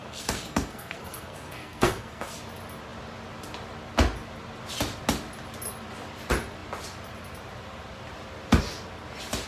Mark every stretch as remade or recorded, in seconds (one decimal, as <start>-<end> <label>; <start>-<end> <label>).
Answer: 0.0-2.4 remade; 2.4-9.5 recorded